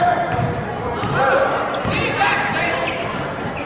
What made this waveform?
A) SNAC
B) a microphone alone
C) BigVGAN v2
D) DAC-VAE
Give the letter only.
C